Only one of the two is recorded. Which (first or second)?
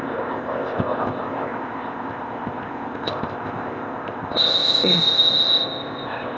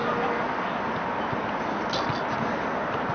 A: second